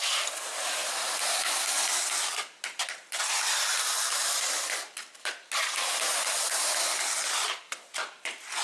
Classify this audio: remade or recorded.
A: recorded